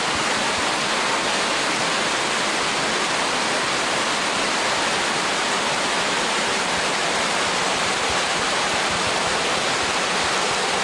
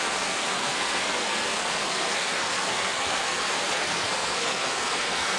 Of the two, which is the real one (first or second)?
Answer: first